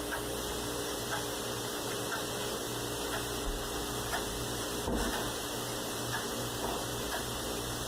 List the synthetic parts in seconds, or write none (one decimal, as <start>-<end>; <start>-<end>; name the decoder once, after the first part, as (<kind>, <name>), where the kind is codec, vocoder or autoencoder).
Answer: none